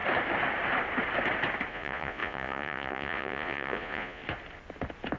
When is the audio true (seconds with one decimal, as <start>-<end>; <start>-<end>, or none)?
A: 0.0-1.7; 4.2-5.2